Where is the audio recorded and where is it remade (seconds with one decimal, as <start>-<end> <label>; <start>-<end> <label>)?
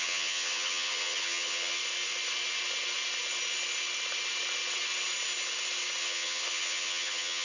0.0-1.8 remade; 1.8-6.0 recorded; 6.0-7.4 remade